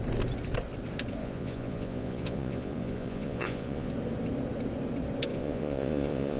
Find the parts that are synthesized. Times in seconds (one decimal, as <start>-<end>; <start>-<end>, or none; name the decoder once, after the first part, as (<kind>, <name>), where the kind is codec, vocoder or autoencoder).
1.2-3.9 (vocoder, Vocos); 5.3-6.4